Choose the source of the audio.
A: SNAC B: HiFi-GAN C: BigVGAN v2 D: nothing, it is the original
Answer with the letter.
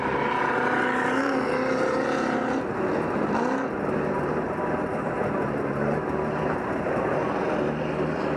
D